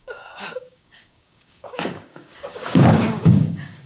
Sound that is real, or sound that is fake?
fake